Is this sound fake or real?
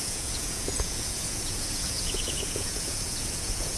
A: fake